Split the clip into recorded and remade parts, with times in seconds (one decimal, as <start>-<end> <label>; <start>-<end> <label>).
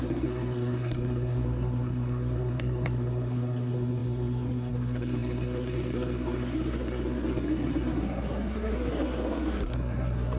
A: 0.0-10.4 remade